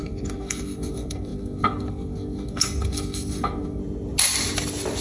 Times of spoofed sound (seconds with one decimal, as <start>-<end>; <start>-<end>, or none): 0.0-3.8

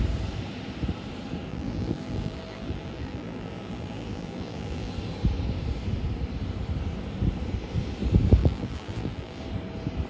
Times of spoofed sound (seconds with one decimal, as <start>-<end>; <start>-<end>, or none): 1.5-4.9; 8.4-9.4

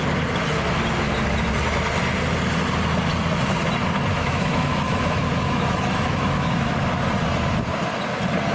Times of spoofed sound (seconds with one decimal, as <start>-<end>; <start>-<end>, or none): 4.1-6.7

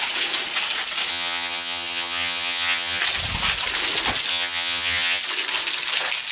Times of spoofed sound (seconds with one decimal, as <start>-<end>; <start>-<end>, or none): 1.1-3.0; 4.3-5.2

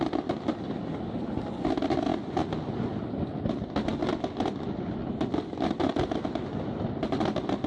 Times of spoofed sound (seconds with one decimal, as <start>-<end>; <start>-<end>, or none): none

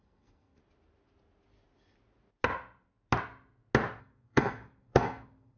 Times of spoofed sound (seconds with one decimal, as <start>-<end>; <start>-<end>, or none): 0.0-0.6; 4.0-5.6